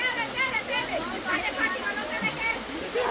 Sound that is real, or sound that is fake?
real